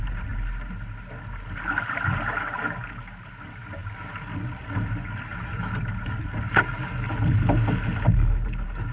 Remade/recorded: recorded